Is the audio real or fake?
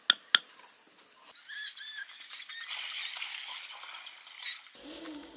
real